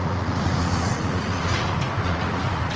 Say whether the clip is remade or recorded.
remade